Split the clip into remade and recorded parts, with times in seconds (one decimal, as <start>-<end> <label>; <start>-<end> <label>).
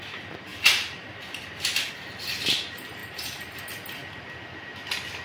0.0-0.5 recorded; 0.5-1.9 remade; 1.9-3.0 recorded; 3.0-3.6 remade; 3.6-5.2 recorded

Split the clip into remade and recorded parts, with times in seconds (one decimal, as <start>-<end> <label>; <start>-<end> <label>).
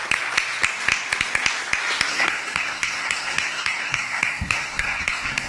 0.0-2.1 recorded; 2.1-5.5 remade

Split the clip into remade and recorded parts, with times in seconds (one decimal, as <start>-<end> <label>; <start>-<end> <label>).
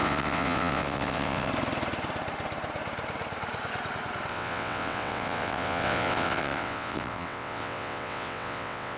0.0-1.5 remade; 1.5-4.3 recorded; 4.3-9.0 remade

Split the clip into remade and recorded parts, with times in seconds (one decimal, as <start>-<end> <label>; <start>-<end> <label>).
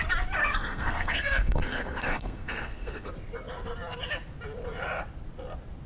0.0-0.4 recorded; 0.4-3.1 remade; 3.1-5.9 recorded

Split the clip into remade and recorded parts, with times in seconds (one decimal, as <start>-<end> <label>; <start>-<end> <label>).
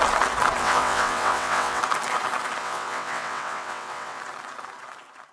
0.0-0.6 recorded; 0.6-1.8 remade; 1.8-2.6 recorded; 2.6-4.2 remade; 4.2-5.3 recorded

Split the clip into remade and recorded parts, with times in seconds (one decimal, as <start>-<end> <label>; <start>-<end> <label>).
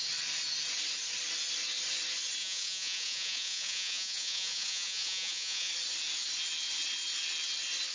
0.0-2.4 recorded; 2.4-5.7 remade; 5.7-7.9 recorded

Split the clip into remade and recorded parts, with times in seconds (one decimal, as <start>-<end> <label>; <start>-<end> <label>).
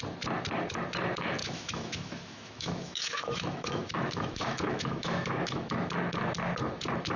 0.0-1.4 recorded; 1.4-5.7 remade; 5.7-7.2 recorded